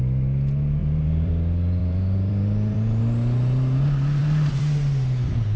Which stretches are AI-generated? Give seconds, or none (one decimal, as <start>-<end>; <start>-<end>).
0.8-1.3; 1.8-3.0; 4.2-5.6